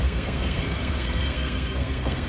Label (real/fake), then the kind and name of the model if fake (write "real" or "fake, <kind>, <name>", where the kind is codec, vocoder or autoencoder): fake, codec, SNAC